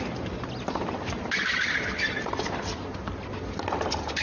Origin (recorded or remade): recorded